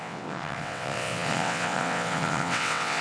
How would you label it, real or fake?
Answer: fake